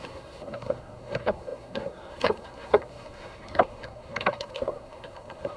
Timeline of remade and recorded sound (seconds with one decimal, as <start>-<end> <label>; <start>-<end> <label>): 0.0-5.6 remade